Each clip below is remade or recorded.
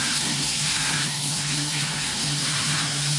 remade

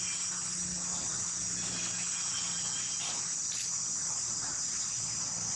recorded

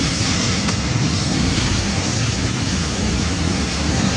remade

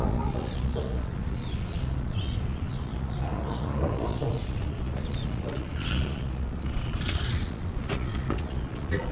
remade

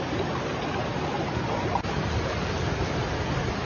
recorded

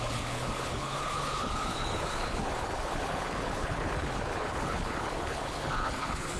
remade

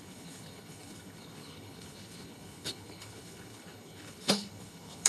remade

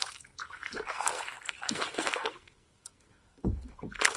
remade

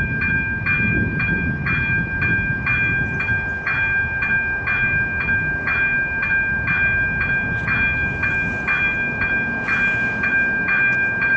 recorded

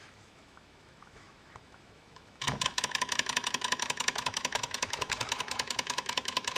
remade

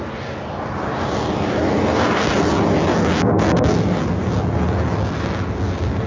recorded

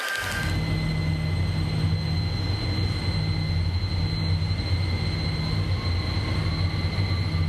recorded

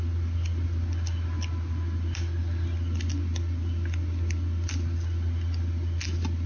recorded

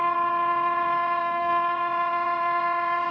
remade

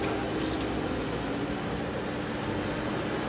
recorded